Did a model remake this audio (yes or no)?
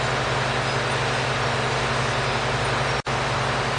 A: no